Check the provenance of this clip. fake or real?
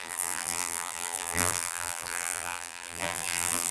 fake